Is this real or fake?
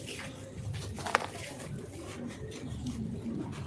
real